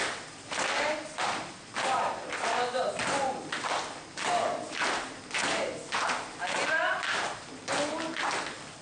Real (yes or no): yes